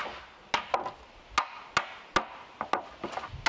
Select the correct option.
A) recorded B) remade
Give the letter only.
A